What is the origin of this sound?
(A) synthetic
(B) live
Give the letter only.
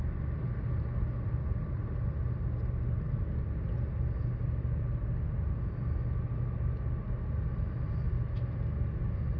B